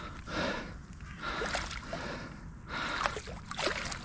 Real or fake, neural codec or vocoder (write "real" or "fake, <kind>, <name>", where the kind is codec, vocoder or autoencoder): real